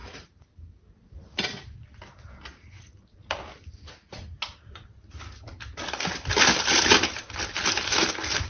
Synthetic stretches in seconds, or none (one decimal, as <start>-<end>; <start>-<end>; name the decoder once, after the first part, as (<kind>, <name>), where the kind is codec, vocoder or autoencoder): none